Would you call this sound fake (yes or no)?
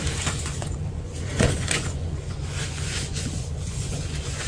yes